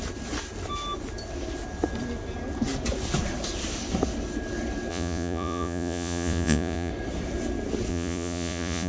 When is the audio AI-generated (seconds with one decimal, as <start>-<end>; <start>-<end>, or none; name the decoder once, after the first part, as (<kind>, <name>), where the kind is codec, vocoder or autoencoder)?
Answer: 4.9-6.9 (vocoder, Vocos); 7.9-8.9